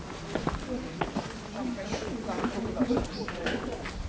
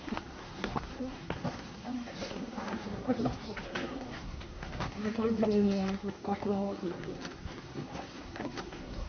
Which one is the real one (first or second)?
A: first